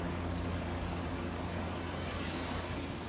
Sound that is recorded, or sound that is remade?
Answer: remade